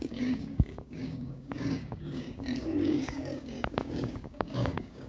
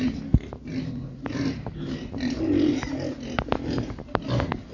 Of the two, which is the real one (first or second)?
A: second